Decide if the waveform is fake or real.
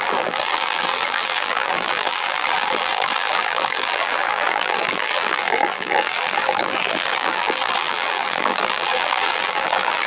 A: fake